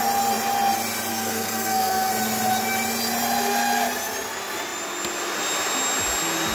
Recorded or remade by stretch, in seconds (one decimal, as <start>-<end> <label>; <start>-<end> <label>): 0.0-1.1 recorded; 1.1-2.1 remade; 2.1-6.5 recorded